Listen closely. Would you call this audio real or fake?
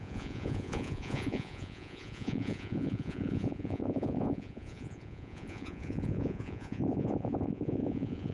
fake